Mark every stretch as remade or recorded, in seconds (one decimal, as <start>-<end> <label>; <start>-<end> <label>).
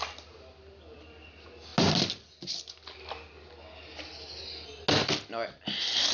0.0-6.1 recorded